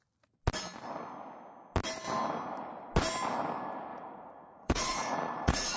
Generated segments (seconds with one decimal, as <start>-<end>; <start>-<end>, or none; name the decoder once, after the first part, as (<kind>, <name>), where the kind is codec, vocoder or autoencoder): 3.9-5.8 (vocoder, Vocos)